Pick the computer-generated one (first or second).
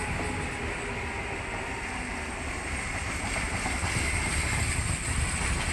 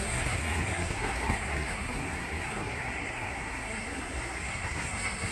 second